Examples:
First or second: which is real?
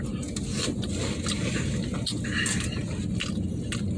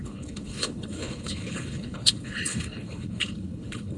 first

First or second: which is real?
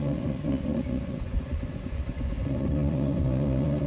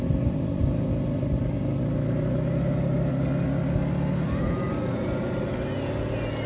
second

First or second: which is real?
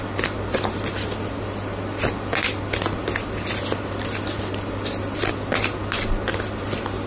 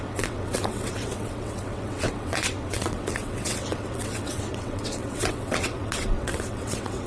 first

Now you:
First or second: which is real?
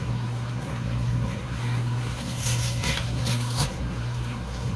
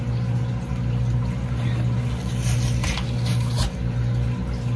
second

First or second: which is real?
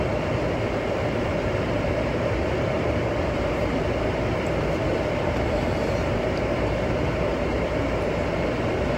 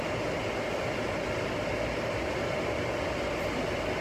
second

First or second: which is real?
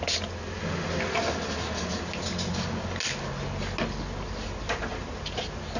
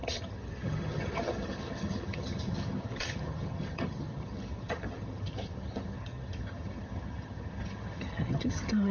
first